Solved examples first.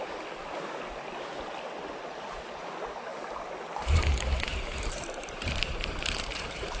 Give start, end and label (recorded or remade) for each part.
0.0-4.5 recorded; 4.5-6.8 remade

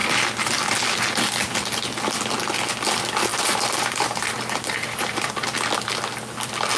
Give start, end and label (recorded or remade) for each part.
0.0-3.3 recorded; 3.3-5.3 remade; 5.3-6.8 recorded

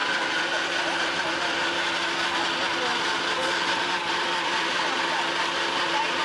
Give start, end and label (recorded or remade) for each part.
0.0-1.6 remade; 1.6-2.9 recorded; 2.9-5.0 remade; 5.0-6.2 recorded

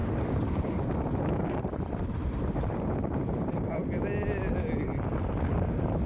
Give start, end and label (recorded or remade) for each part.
0.0-3.8 remade; 3.8-5.2 recorded; 5.2-6.1 remade

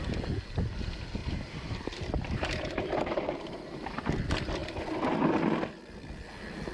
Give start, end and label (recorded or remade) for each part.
0.0-1.2 recorded; 1.2-4.0 remade; 4.0-6.7 recorded

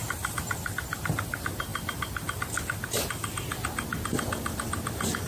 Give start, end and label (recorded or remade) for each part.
0.0-5.3 recorded

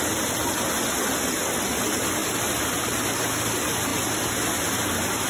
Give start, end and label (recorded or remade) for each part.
0.0-2.2 recorded; 2.2-2.8 remade; 2.8-5.3 recorded